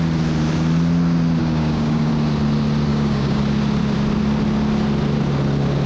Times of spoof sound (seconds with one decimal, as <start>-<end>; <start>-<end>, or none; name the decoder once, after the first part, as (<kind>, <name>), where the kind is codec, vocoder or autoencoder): 1.4-2.1 (codec, DAC); 2.9-3.4